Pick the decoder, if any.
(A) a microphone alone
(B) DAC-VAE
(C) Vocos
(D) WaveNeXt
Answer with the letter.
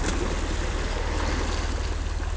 A